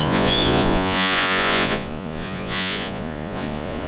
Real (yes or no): no